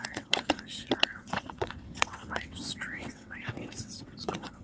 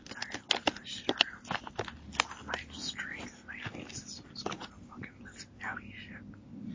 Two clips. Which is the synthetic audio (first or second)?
first